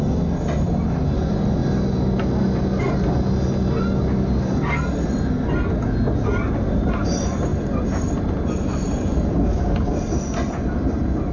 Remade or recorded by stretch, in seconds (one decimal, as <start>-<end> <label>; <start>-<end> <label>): 0.0-11.3 recorded